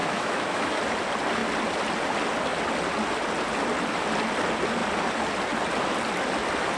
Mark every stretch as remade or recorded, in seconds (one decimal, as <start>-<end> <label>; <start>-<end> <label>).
0.0-0.8 remade; 0.8-6.8 recorded